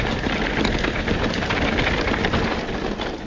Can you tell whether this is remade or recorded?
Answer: recorded